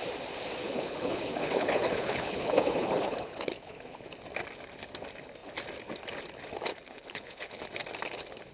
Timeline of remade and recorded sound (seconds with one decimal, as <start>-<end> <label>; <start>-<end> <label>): 0.0-0.6 recorded; 0.6-4.1 remade; 4.1-6.7 recorded; 6.7-7.6 remade; 7.6-8.5 recorded